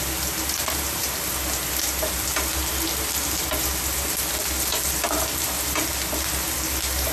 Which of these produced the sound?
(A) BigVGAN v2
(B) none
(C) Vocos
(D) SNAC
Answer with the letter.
B